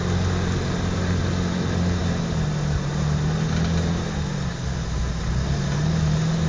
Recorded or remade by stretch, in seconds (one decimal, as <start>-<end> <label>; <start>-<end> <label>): 0.0-6.5 recorded